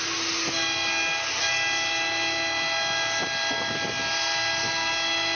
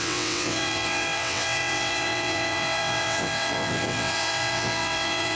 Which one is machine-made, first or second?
second